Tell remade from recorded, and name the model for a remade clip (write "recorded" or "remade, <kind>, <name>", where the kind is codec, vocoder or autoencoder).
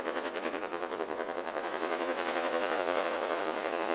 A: remade, vocoder, Vocos